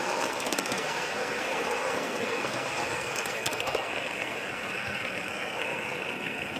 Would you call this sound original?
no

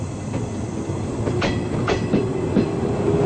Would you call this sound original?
yes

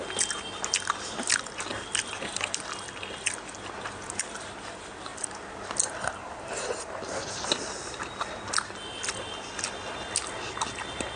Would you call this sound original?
yes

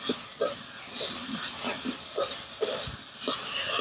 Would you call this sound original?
yes